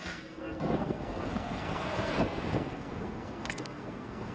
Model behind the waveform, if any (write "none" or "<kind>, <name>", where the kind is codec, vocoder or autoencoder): codec, SNAC